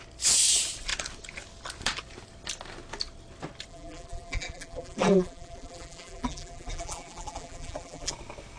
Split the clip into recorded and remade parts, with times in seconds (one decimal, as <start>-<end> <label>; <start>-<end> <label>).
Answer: 0.0-3.7 recorded; 3.7-8.1 remade; 8.1-8.6 recorded

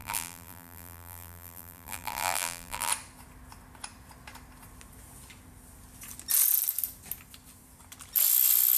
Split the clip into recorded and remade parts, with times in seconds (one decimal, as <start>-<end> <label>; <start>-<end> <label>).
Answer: 0.0-2.9 remade; 2.9-8.8 recorded

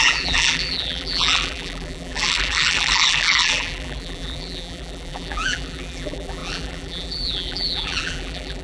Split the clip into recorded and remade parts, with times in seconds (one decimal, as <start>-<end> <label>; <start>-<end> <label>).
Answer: 0.0-8.6 remade

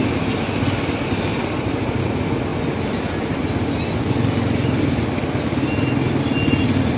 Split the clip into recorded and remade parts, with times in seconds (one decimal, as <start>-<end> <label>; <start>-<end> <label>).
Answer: 0.0-1.3 recorded; 1.3-2.0 remade; 2.0-7.0 recorded

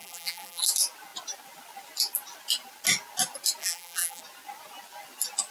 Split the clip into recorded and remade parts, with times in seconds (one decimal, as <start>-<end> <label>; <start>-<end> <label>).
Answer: 0.0-0.6 remade; 0.6-3.6 recorded; 3.6-4.2 remade; 4.2-5.5 recorded

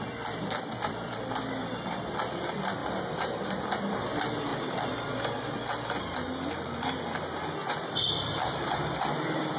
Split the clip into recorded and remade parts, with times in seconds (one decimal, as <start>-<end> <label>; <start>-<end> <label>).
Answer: 0.0-4.5 remade; 4.5-7.7 recorded; 7.7-9.6 remade

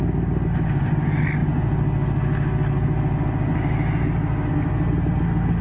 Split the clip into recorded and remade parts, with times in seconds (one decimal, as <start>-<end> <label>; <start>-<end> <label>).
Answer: 0.0-5.6 recorded

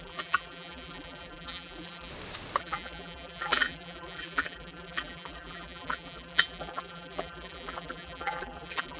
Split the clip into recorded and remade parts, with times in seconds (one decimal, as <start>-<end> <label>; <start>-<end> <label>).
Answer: 0.0-2.1 remade; 2.1-2.6 recorded; 2.6-9.0 remade